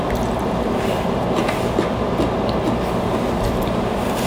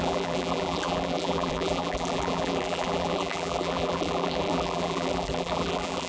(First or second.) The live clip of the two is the first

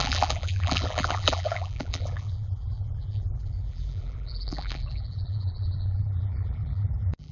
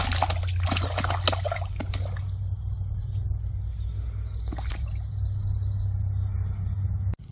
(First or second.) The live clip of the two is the second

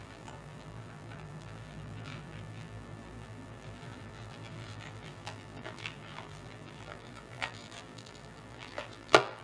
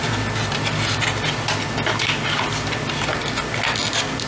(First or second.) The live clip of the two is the second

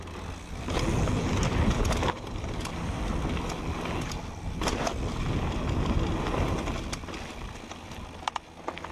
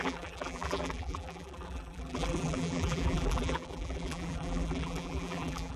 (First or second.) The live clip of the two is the first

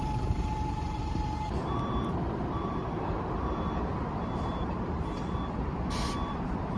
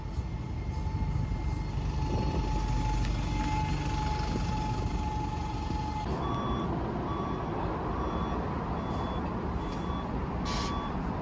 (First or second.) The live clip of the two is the second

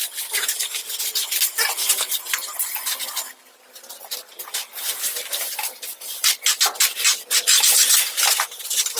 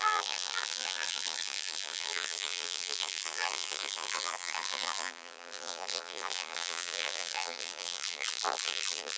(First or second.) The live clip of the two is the first